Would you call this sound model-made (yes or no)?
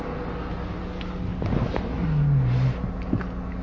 no